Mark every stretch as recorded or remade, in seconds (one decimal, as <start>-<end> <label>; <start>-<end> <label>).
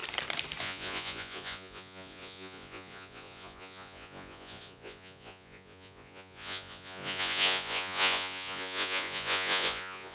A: 0.0-0.6 recorded; 0.6-10.1 remade